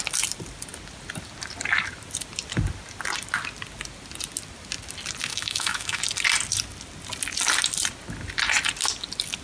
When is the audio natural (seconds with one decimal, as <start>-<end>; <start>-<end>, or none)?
0.0-5.3; 6.0-9.4